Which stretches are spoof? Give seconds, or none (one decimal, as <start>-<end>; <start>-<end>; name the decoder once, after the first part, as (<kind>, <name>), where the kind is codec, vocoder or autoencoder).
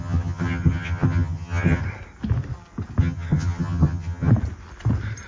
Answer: 0.0-1.8 (vocoder, HiFi-GAN); 3.0-4.3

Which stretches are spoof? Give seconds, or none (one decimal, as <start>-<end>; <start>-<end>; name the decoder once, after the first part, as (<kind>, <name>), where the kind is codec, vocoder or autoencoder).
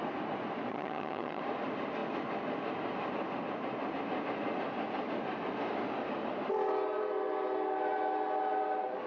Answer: 0.7-1.4 (vocoder, HiFi-GAN)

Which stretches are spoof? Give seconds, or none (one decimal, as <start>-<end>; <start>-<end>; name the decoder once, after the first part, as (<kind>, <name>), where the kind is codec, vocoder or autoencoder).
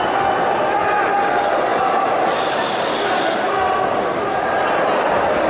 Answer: none